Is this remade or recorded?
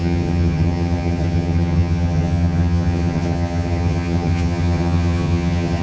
remade